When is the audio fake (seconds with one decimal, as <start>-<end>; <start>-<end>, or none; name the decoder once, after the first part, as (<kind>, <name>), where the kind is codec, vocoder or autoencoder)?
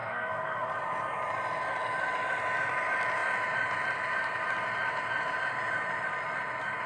0.0-0.7 (codec, SNAC)